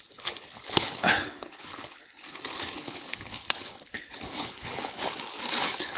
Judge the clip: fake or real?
fake